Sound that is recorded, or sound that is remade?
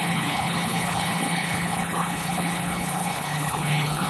remade